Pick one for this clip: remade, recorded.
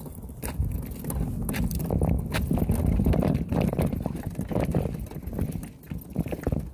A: recorded